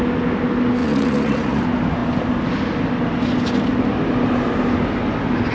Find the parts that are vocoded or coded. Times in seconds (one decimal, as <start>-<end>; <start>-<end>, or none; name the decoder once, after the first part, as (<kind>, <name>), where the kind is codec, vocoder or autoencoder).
0.8-1.6 (vocoder, Vocos)